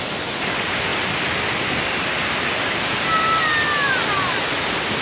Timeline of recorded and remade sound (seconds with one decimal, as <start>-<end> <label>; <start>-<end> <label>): 0.0-5.0 recorded